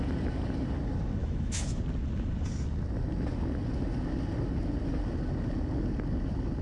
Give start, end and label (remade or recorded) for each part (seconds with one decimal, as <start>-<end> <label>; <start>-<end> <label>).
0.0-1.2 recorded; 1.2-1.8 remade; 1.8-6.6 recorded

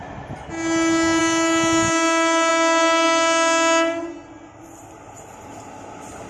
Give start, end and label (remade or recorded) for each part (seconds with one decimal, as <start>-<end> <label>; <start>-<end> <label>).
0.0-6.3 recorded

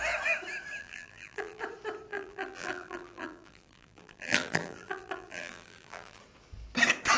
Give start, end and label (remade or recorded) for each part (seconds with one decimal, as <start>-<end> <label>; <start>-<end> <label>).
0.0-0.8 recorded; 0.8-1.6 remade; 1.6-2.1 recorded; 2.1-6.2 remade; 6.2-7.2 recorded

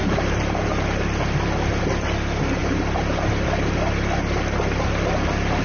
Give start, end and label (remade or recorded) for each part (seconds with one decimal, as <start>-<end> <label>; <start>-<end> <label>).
0.0-5.6 recorded